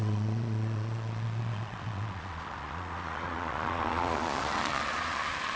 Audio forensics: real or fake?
fake